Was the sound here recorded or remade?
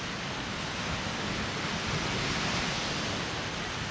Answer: recorded